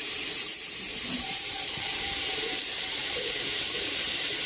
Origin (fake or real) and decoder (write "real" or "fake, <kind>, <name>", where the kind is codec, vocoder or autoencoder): fake, vocoder, BigVGAN v2